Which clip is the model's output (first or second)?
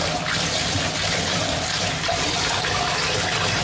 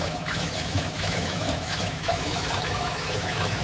second